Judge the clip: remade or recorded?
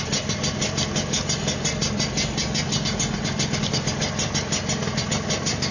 recorded